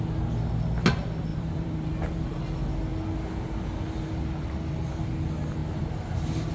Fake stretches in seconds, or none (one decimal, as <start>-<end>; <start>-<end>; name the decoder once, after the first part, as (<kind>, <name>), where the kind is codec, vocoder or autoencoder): 1.3-2.4 (vocoder, BigVGAN v2); 5.6-6.5